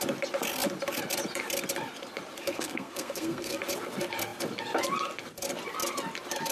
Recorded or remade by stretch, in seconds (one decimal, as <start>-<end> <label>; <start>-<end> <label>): 0.0-2.5 recorded; 2.5-3.6 remade; 3.6-6.5 recorded